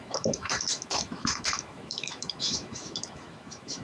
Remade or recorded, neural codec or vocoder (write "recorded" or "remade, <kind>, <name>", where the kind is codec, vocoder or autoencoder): remade, autoencoder, DAC-VAE